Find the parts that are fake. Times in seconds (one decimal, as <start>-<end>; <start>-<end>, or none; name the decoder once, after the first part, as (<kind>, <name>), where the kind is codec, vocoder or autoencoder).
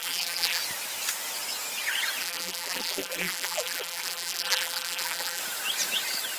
0.0-0.6 (vocoder, BigVGAN v2); 2.2-5.4